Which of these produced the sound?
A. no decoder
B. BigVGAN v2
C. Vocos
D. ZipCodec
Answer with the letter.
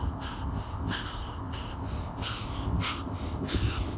D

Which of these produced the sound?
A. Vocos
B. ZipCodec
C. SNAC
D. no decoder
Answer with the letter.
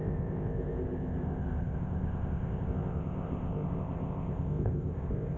B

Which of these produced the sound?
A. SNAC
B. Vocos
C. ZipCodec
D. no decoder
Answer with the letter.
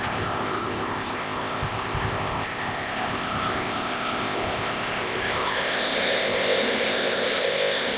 C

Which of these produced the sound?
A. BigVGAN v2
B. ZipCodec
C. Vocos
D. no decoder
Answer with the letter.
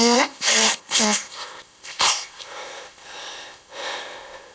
B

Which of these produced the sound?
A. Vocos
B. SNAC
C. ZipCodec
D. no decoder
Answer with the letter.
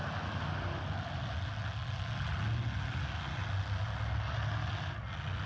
D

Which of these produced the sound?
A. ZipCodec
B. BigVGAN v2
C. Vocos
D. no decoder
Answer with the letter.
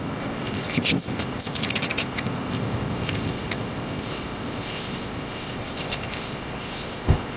A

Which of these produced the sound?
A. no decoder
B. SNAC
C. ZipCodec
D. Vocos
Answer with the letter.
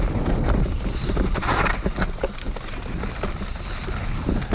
A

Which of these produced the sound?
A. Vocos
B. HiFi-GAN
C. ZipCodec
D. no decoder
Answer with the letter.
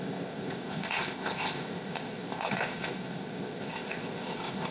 C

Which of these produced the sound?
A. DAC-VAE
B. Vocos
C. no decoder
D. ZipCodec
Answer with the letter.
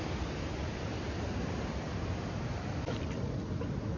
C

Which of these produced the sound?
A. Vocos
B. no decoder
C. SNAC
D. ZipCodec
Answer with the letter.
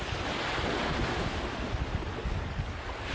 B